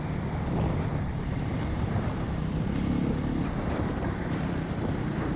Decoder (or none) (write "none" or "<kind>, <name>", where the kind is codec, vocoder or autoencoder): vocoder, BigVGAN v2